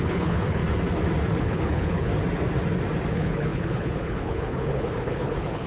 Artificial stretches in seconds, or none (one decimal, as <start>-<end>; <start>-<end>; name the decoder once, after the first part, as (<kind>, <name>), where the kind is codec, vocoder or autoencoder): 0.0-0.6 (codec, HILCodec); 1.4-2.1; 3.1-5.7